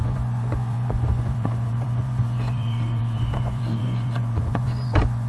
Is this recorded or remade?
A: remade